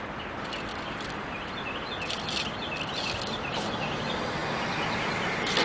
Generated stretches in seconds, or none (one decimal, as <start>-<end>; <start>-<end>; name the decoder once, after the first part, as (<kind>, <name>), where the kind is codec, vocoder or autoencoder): none